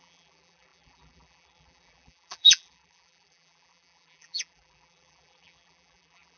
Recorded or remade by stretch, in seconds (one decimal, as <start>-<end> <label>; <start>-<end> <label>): 0.0-6.4 remade